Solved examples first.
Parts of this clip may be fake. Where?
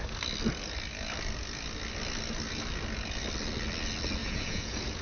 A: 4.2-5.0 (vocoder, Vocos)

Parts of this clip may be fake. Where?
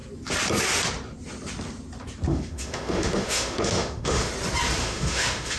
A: 2.3-4.3 (autoencoder, DAC-VAE); 4.8-5.6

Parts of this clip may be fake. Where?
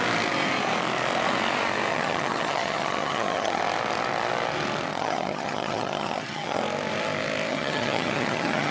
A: 1.9-3.6 (vocoder, HiFi-GAN); 4.9-6.6; 7.5-8.7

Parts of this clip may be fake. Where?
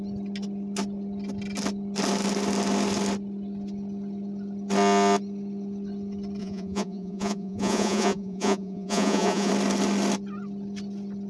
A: 6.4-9.5 (vocoder, Vocos)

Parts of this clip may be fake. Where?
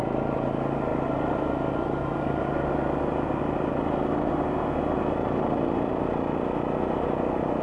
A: none